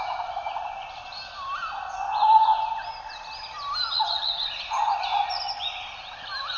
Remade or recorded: recorded